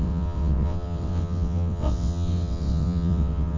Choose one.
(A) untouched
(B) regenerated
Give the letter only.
B